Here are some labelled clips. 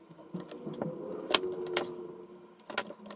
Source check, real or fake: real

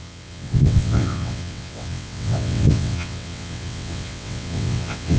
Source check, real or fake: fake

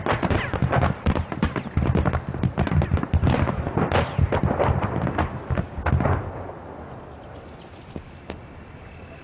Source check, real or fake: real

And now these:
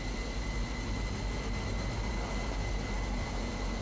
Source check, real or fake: real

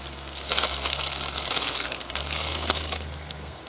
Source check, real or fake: fake